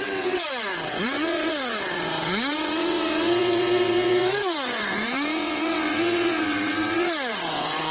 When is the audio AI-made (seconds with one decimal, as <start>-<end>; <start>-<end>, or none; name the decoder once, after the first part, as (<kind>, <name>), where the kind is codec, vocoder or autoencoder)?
0.0-7.9 (vocoder, WaveNeXt)